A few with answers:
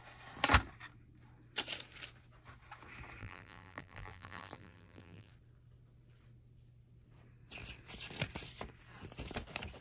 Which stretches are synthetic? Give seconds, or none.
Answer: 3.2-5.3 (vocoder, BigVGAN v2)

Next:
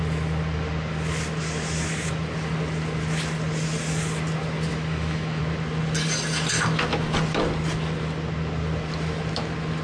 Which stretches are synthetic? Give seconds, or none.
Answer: 4.7-5.4 (autoencoder, DAC-VAE)

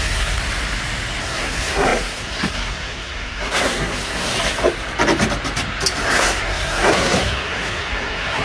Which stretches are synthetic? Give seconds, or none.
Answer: 0.0-0.4 (codec, SNAC); 1.2-4.3; 6.1-8.4

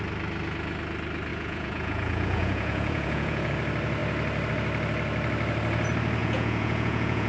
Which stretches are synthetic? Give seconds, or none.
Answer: 1.3-3.5 (vocoder, Vocos); 6.2-7.3

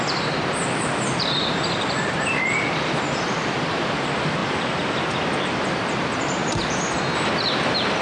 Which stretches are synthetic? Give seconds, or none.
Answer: 0.0-4.4 (vocoder, BigVGAN v2); 5.6-6.4